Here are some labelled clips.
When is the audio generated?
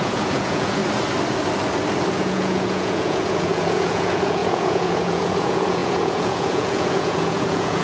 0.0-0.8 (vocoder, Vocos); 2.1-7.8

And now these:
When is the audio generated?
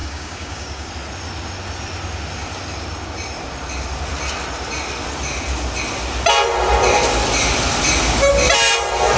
0.0-0.9 (codec, DAC)